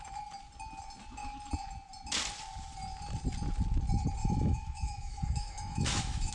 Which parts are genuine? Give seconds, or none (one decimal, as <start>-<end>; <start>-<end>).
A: 0.0-4.2